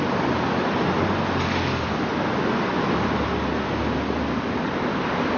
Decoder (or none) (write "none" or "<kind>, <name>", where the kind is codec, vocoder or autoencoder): none